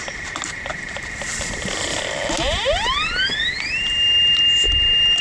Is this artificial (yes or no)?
no